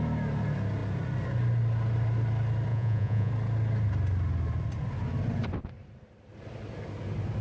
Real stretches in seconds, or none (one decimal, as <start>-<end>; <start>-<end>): 0.0-2.7; 3.3-7.4